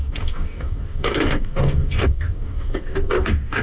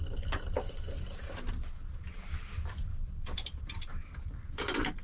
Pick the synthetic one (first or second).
first